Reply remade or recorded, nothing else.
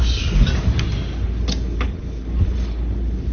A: recorded